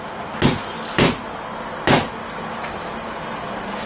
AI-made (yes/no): no